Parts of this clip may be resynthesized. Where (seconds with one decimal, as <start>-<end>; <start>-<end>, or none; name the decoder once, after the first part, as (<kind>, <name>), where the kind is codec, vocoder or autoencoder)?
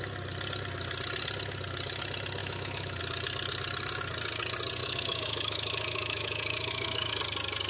2.4-3.0 (autoencoder, DAC-VAE); 4.8-7.2